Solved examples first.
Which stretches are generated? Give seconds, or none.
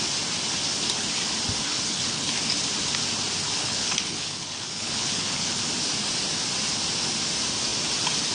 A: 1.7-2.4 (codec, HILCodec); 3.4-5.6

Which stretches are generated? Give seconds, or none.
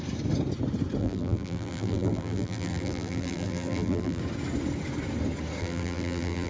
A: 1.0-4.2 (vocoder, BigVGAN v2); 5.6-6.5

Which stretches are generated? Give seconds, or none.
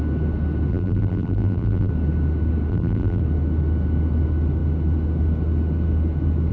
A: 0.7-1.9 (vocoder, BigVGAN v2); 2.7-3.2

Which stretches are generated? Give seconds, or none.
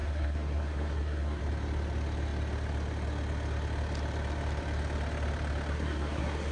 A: 0.0-1.4 (codec, SNAC); 5.7-6.5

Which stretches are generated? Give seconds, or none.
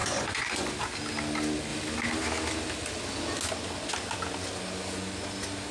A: 0.0-0.7 (vocoder, Vocos)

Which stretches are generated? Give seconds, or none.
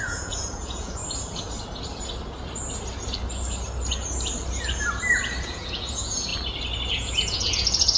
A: 0.0-1.0 (vocoder, Vocos); 5.4-6.3; 6.9-8.0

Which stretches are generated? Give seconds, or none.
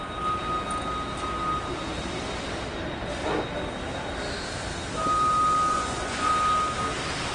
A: 5.7-6.3 (vocoder, Vocos)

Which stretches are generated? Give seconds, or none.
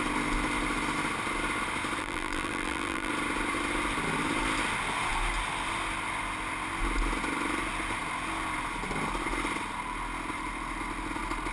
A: 2.0-3.1 (vocoder, BigVGAN v2)